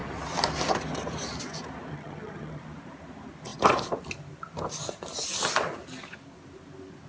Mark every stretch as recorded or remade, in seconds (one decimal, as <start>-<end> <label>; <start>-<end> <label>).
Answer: 0.0-1.9 recorded; 1.9-2.6 remade; 2.6-7.1 recorded